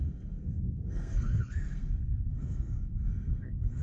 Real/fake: fake